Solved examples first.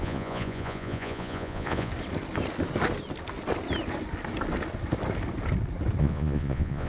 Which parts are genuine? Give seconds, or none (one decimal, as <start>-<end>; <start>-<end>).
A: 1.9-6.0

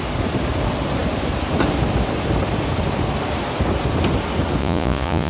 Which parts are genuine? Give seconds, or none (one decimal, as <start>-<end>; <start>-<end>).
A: 0.0-4.6

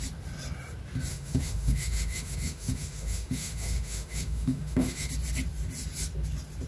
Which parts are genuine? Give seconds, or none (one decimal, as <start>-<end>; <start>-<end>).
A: 0.0-1.1; 5.1-6.7

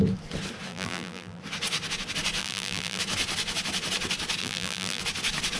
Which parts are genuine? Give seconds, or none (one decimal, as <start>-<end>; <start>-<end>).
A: 0.0-0.7; 1.4-2.4; 3.0-4.4; 5.0-5.6

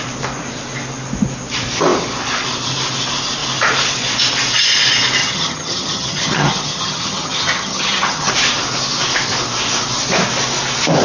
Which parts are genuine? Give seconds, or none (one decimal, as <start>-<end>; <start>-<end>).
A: 0.0-5.2; 8.3-11.0

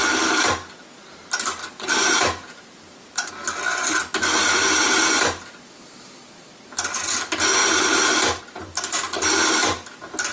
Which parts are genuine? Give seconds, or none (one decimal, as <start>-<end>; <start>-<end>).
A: 0.0-1.6; 3.3-4.4; 6.2-7.6; 8.4-10.3

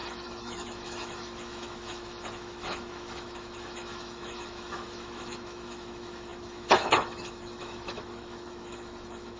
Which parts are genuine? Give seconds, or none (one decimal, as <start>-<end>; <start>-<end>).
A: none